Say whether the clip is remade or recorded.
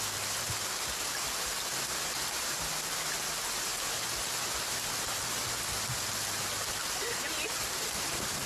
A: recorded